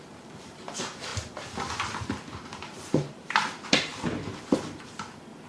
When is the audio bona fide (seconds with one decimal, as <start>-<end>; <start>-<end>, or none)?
1.1-2.3; 3.9-5.5